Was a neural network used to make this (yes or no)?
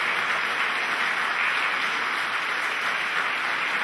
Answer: no